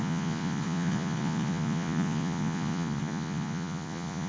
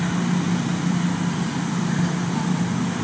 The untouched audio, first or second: second